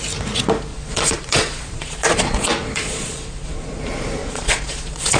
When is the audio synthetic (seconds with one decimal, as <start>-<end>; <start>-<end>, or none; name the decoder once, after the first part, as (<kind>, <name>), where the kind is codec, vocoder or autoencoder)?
0.7-3.8 (vocoder, Vocos); 4.2-5.2